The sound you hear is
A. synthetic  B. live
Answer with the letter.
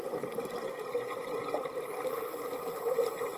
B